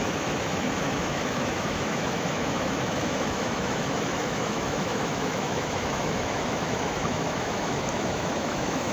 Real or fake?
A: fake